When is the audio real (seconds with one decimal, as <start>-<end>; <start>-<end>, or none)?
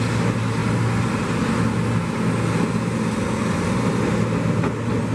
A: 0.0-5.1